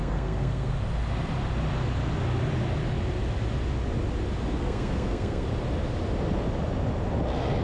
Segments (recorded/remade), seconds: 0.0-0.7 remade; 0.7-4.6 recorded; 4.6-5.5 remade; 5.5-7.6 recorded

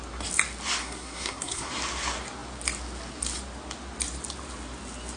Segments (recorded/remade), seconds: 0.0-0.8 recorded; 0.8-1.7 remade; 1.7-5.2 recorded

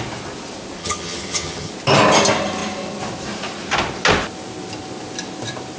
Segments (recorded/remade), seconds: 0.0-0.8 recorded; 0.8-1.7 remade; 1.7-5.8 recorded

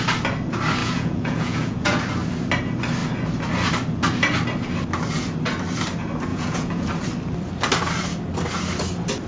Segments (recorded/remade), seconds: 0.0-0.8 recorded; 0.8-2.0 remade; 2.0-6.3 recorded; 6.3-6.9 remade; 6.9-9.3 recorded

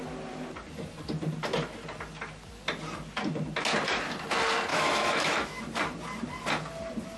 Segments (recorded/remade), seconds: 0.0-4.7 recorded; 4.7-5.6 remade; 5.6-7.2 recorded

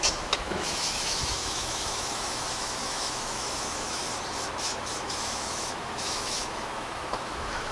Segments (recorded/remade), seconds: 0.0-4.0 remade; 4.0-4.6 recorded; 4.6-7.7 remade

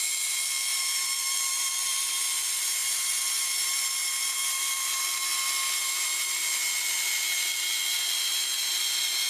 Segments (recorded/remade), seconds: 0.0-0.7 recorded; 0.7-2.2 remade; 2.2-2.8 recorded; 2.8-5.0 remade; 5.0-8.6 recorded; 8.6-9.3 remade